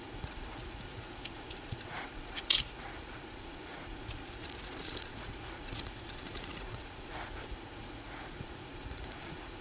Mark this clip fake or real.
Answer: fake